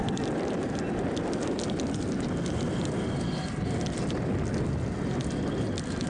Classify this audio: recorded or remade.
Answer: recorded